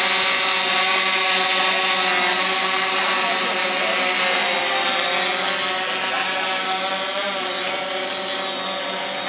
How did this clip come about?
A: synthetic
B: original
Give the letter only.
B